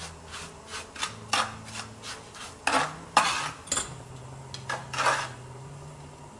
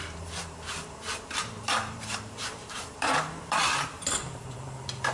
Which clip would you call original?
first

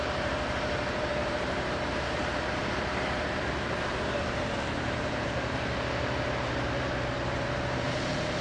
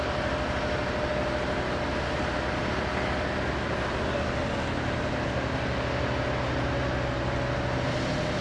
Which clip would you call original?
second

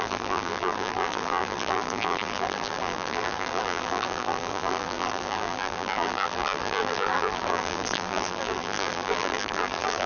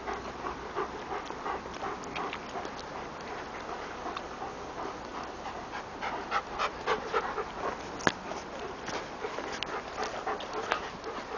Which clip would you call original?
second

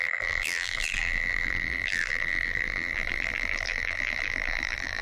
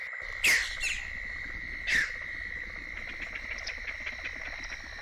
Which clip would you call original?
second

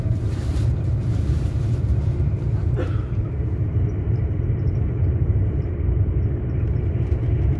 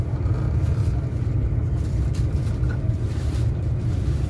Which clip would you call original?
second